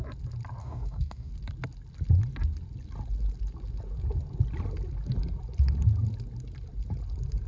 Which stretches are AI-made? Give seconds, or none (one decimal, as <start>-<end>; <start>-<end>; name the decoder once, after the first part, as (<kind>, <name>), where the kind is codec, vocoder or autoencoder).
0.6-1.3 (codec, DAC)